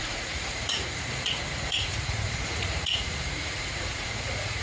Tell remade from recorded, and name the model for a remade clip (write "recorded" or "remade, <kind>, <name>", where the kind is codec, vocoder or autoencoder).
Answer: remade, vocoder, Vocos